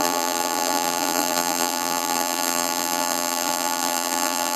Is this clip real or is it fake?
fake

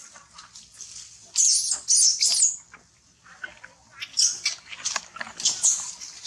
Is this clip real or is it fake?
real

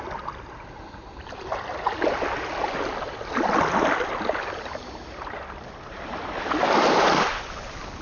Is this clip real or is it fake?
real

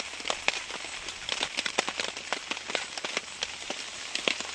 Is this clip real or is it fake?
real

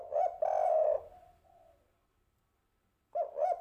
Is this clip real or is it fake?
real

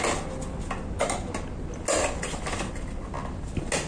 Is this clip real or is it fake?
real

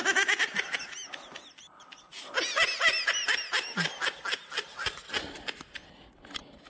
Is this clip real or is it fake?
real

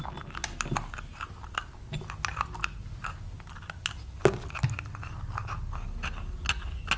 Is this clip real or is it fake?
real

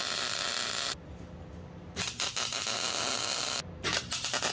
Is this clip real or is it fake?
real